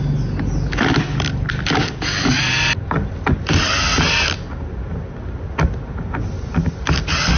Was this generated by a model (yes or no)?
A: no